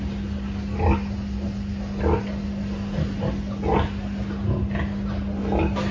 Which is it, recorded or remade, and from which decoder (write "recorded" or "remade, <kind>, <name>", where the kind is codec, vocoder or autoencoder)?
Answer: recorded